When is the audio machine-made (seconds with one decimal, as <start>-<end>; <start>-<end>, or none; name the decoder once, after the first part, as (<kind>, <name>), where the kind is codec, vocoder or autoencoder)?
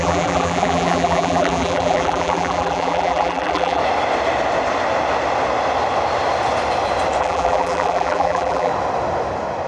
0.0-3.8 (vocoder, BigVGAN v2); 7.2-8.7